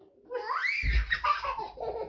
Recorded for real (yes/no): yes